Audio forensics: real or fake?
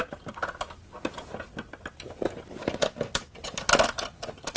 real